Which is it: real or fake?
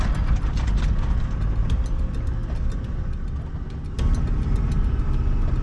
real